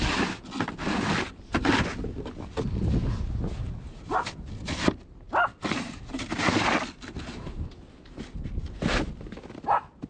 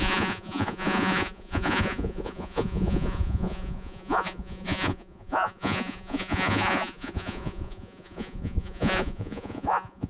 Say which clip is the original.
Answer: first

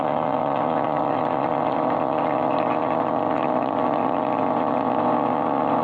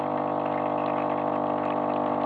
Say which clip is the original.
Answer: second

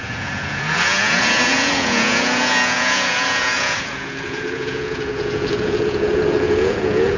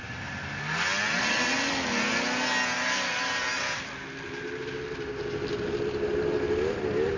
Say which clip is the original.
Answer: second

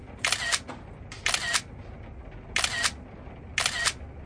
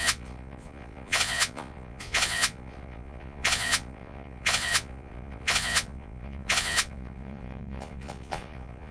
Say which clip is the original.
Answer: first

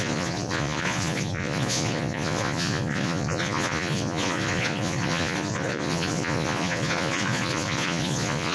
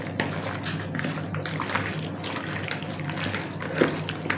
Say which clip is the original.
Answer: second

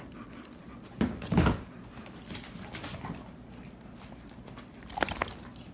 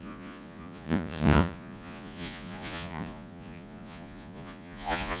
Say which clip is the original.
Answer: first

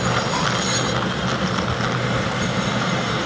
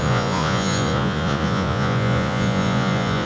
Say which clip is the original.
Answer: first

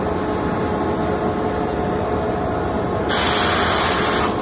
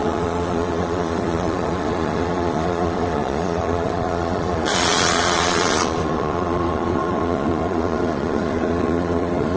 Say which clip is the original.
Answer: first